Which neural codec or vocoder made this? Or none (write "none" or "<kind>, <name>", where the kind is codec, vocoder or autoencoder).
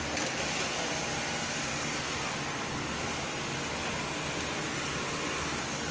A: none